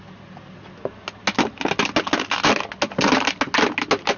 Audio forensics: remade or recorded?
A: recorded